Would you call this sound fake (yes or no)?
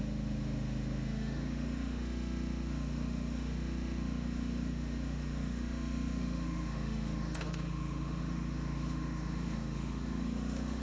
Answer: yes